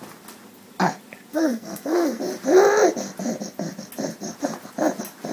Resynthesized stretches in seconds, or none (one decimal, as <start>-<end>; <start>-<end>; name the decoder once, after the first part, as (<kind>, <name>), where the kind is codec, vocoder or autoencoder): 1.3-2.2 (codec, SNAC)